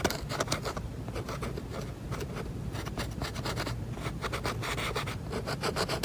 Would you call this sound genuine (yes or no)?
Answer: yes